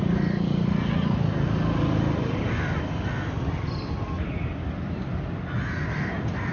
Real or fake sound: real